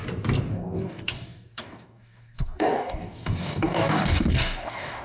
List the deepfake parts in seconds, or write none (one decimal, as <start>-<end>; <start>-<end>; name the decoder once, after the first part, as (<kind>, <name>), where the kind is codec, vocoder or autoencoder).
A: 0.5-5.0 (codec, DAC)

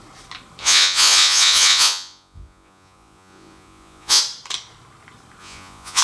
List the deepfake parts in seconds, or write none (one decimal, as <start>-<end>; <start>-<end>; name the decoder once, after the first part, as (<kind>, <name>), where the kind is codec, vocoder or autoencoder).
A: 0.6-4.2 (vocoder, Vocos); 5.4-6.0

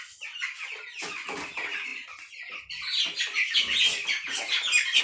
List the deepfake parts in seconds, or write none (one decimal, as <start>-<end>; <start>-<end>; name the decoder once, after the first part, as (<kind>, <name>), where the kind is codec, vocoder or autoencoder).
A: none

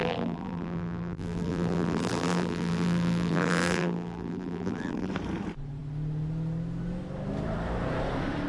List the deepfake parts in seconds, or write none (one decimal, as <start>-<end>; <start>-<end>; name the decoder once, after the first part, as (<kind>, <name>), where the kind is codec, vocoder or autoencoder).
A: 0.0-5.1 (vocoder, BigVGAN v2)

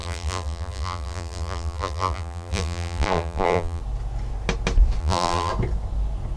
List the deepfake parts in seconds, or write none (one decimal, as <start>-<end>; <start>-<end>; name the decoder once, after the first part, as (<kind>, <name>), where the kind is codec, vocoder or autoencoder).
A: 0.0-3.8 (vocoder, BigVGAN v2); 5.0-5.5